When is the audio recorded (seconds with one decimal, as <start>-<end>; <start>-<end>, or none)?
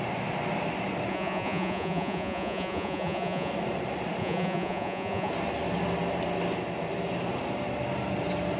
0.0-1.1; 3.5-4.2; 5.3-8.6